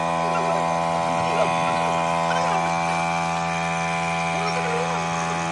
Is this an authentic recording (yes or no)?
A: yes